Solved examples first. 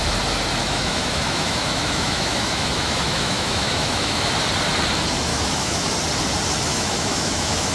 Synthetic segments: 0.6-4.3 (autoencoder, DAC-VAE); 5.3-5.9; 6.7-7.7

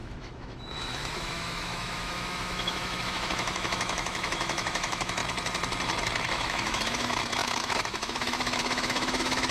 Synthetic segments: 0.0-5.2 (autoencoder, DAC-VAE); 6.3-9.5

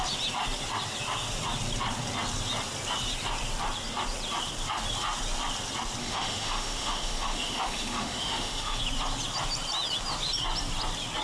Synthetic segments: 6.0-8.8 (autoencoder, DAC-VAE)

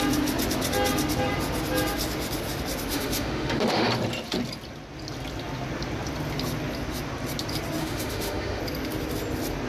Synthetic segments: 2.9-3.9 (autoencoder, DAC-VAE); 7.8-8.6

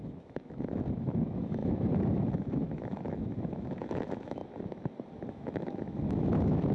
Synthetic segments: 0.0-4.4 (autoencoder, DAC-VAE); 5.3-6.7

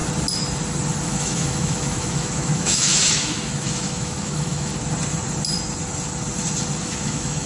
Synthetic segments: 1.0-4.7 (autoencoder, DAC-VAE); 6.8-7.5

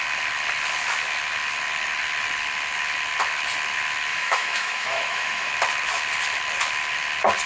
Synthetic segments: 4.1-5.5 (autoencoder, DAC-VAE)